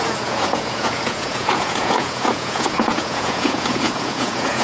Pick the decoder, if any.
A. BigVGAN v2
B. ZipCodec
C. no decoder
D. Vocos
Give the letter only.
D